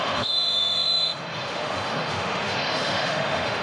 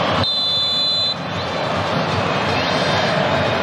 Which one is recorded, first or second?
second